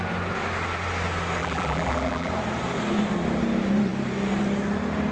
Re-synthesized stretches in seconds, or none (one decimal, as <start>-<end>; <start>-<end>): 1.4-2.3